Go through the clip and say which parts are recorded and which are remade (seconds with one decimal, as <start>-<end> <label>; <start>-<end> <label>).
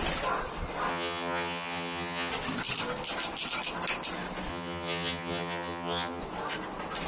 0.0-0.9 recorded; 0.9-2.3 remade; 2.3-4.5 recorded; 4.5-6.2 remade; 6.2-7.1 recorded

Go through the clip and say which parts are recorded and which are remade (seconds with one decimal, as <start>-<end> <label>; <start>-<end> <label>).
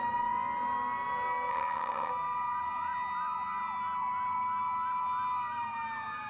0.0-1.5 recorded; 1.5-2.1 remade; 2.1-6.3 recorded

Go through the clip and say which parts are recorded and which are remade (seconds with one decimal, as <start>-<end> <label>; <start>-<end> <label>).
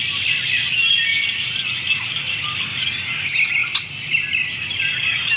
0.0-5.4 recorded